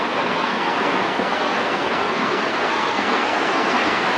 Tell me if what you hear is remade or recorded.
remade